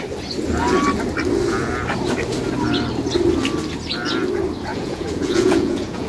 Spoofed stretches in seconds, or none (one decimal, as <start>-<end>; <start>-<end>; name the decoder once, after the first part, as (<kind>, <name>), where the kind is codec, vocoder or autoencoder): 4.7-6.1 (vocoder, Vocos)